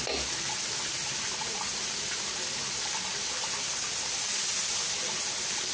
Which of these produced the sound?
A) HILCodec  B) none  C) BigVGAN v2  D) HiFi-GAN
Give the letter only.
B